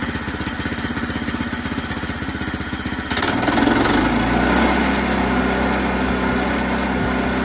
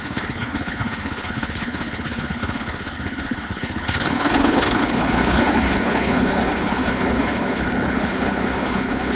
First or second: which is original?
first